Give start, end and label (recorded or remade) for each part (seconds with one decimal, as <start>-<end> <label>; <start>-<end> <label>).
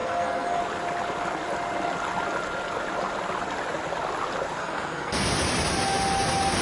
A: 0.0-0.6 remade; 0.6-4.6 recorded; 4.6-5.2 remade; 5.2-6.6 recorded